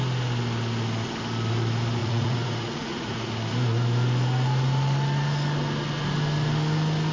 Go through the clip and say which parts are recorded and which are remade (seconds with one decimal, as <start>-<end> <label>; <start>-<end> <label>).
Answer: 0.0-2.0 recorded; 2.0-3.3 remade; 3.3-7.1 recorded